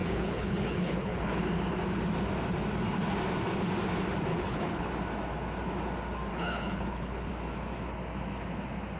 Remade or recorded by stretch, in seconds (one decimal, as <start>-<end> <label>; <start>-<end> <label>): 0.0-1.4 remade; 1.4-4.3 recorded; 4.3-4.9 remade; 4.9-6.3 recorded; 6.3-7.3 remade; 7.3-9.0 recorded